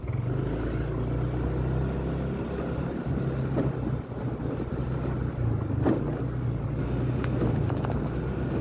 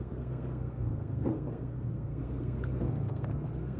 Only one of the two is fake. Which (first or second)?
second